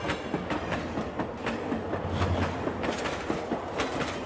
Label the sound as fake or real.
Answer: real